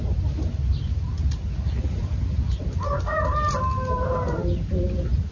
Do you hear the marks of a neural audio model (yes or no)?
no